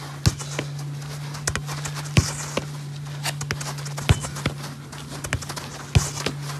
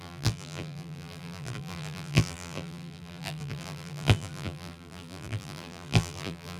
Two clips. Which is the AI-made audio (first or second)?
second